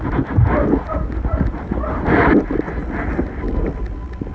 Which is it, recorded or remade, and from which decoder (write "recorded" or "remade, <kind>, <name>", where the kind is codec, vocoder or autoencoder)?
recorded